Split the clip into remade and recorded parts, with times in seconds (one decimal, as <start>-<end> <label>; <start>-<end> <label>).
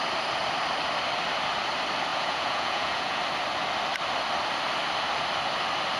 0.0-2.1 recorded; 2.1-3.2 remade; 3.2-6.0 recorded